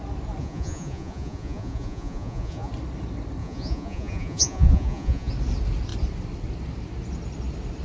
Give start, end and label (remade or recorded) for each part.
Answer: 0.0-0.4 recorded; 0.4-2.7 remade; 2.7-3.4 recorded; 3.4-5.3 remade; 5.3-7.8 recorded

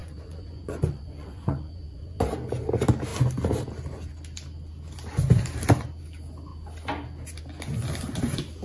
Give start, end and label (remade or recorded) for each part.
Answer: 0.0-2.2 remade; 2.2-8.6 recorded

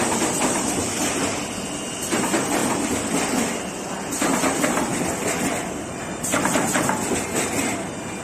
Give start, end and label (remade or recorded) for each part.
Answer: 0.0-8.2 recorded

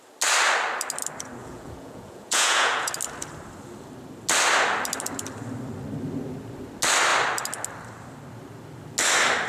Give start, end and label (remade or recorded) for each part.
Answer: 0.0-1.4 recorded; 1.4-2.9 remade; 2.9-9.5 recorded

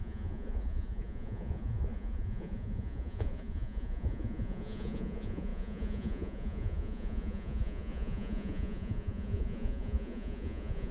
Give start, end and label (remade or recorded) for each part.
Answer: 0.0-10.9 remade

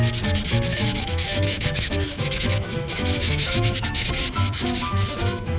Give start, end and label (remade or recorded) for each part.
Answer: 0.0-0.7 recorded; 0.7-4.1 remade; 4.1-4.8 recorded; 4.8-5.6 remade

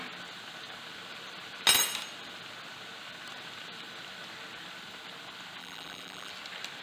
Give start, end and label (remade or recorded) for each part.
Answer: 0.0-5.6 recorded; 5.6-6.3 remade; 6.3-6.8 recorded